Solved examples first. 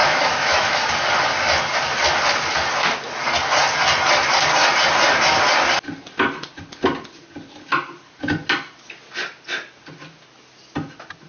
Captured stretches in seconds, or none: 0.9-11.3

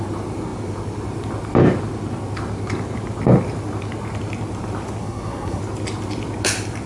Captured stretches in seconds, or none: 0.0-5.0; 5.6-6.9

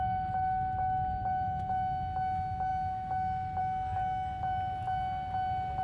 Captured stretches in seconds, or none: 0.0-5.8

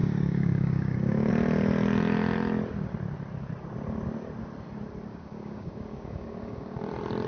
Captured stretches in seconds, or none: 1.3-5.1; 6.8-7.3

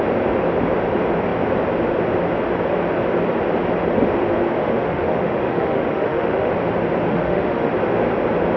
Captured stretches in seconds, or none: 0.0-4.6; 6.5-7.1; 7.7-8.6

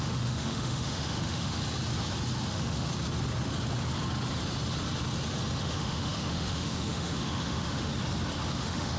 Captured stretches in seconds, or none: 1.6-2.5; 2.9-5.6; 7.9-8.5